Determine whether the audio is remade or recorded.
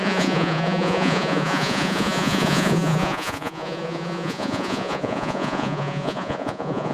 remade